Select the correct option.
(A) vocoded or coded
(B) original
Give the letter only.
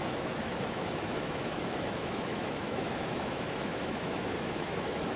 A